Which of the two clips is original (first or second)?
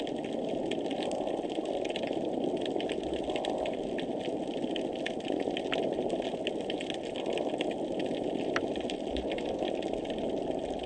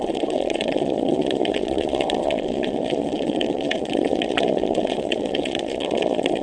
first